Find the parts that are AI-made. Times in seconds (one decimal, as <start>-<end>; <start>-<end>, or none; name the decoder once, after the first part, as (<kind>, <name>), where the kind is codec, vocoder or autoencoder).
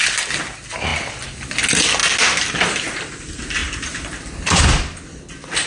none